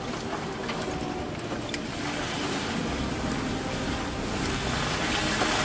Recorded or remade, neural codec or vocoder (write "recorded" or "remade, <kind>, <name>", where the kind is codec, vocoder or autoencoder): recorded